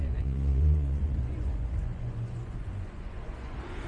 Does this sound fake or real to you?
fake